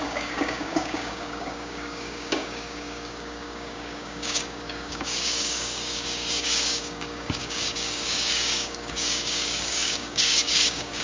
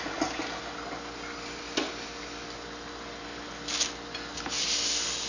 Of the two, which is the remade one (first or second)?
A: first